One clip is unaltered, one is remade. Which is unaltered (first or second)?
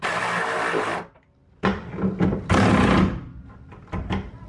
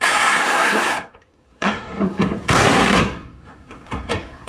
first